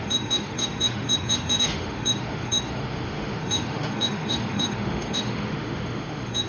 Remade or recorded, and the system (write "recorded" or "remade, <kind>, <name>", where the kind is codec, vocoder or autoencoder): remade, autoencoder, DAC-VAE